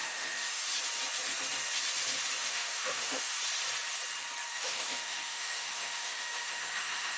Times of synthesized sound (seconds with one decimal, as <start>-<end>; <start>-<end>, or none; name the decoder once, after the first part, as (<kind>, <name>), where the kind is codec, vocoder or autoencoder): 0.0-0.7 (autoencoder, DAC-VAE); 2.4-3.4; 4.5-7.2